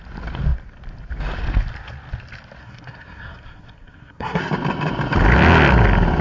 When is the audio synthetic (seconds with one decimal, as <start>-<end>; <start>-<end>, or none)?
2.6-4.4

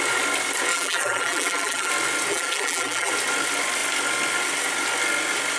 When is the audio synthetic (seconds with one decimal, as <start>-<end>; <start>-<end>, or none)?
0.7-1.9; 2.3-3.1

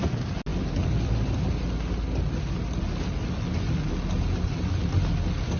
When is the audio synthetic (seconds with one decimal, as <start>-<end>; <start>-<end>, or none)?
none

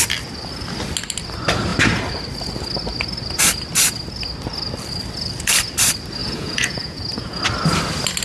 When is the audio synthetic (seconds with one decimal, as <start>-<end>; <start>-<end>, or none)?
6.2-7.4

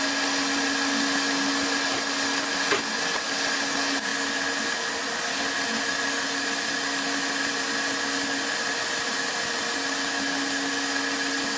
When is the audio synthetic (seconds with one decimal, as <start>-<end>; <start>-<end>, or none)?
none